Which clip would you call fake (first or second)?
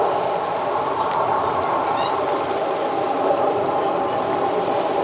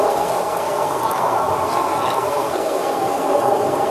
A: second